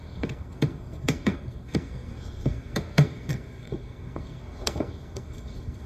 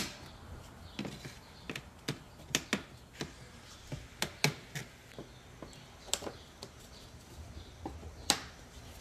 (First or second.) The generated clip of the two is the first